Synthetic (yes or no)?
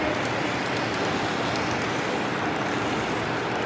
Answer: no